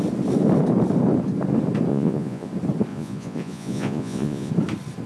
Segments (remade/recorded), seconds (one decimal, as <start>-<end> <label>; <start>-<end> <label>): 0.0-1.9 recorded; 1.9-2.5 remade; 2.5-2.9 recorded; 2.9-4.5 remade; 4.5-5.1 recorded